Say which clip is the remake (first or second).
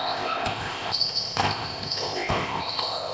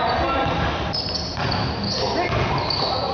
first